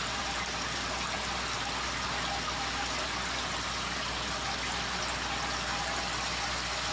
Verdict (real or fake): real